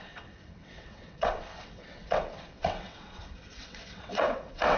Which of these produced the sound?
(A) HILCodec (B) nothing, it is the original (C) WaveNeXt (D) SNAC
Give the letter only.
C